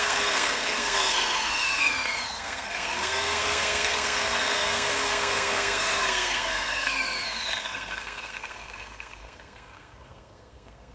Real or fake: fake